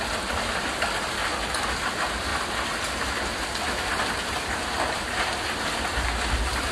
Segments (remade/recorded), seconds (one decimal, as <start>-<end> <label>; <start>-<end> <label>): 0.0-1.2 remade; 1.2-1.7 recorded; 1.7-6.7 remade